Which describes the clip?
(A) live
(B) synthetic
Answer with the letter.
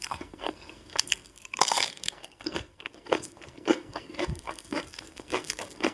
B